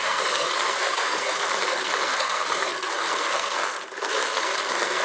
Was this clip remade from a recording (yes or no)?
yes